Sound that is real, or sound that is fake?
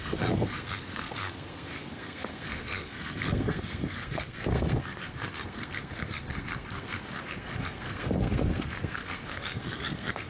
fake